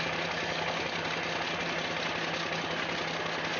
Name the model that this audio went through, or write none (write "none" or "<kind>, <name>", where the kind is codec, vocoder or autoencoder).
none